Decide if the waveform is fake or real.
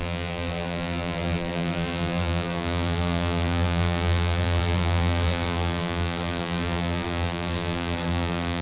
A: fake